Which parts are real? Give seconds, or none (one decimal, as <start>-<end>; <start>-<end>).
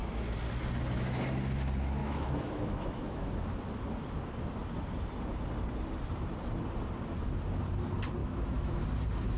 0.0-2.0; 3.3-8.2; 8.8-9.4